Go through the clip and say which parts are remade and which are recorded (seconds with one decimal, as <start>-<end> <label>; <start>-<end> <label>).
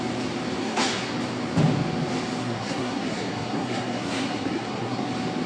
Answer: 0.0-0.6 recorded; 0.6-1.1 remade; 1.1-2.4 recorded; 2.4-5.1 remade; 5.1-5.5 recorded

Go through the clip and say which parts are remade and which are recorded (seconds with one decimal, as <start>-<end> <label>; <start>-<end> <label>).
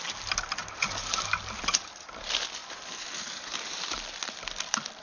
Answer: 0.0-5.0 recorded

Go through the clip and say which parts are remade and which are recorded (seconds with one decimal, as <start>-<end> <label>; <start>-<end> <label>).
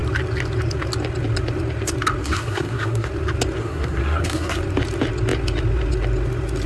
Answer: 0.0-2.2 recorded; 2.2-3.1 remade; 3.1-3.6 recorded; 3.6-4.6 remade; 4.6-6.7 recorded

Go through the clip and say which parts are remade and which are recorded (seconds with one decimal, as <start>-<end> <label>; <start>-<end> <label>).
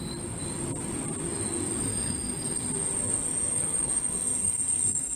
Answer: 0.0-1.9 recorded; 1.9-2.6 remade; 2.6-3.5 recorded; 3.5-5.2 remade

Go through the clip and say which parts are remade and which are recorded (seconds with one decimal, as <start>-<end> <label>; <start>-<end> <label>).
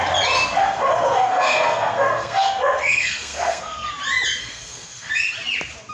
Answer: 0.0-0.6 recorded; 0.6-3.9 remade; 3.9-4.4 recorded; 4.4-5.1 remade; 5.1-5.9 recorded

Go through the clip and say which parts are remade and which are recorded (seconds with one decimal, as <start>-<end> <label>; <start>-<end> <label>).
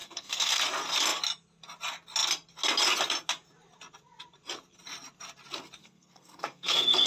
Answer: 0.0-0.6 remade; 0.6-5.8 recorded; 5.8-7.1 remade